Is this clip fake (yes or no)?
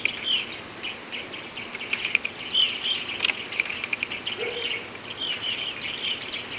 no